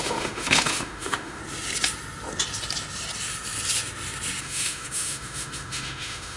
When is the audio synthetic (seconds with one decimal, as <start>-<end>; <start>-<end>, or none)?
0.0-1.4; 4.4-6.4